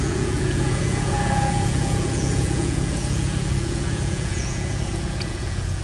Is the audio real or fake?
fake